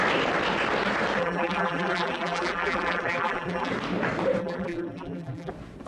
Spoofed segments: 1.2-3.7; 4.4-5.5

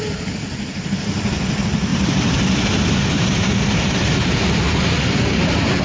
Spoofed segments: 1.9-3.5

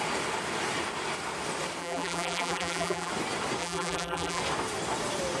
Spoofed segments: 1.8-3.1; 3.6-4.4

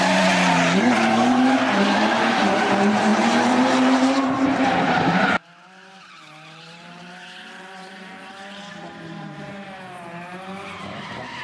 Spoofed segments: 0.0-11.4

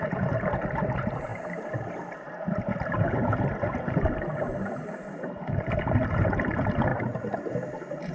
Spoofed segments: 0.0-8.1

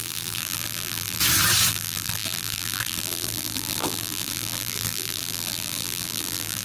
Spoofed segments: 0.0-1.2; 1.7-6.6